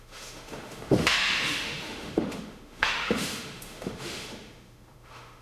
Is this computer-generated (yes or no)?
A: yes